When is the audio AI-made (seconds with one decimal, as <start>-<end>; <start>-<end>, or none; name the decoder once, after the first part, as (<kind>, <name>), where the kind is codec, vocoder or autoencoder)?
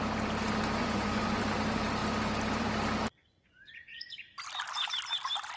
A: 0.8-1.4 (vocoder, Vocos); 3.2-4.2